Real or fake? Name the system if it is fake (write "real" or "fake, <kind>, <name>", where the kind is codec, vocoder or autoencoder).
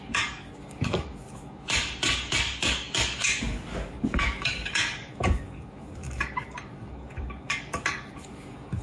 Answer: fake, codec, DAC